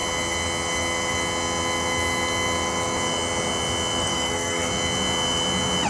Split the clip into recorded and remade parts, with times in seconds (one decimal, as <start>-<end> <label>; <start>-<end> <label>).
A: 0.0-4.0 recorded; 4.0-4.7 remade; 4.7-5.9 recorded